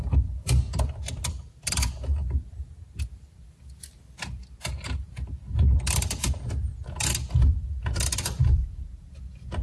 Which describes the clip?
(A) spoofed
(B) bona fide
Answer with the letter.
B